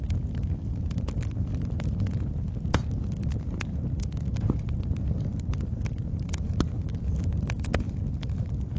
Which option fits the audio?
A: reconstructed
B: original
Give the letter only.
B